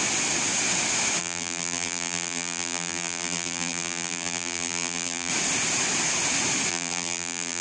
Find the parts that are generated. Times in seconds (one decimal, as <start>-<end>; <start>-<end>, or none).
1.2-5.3; 6.7-7.6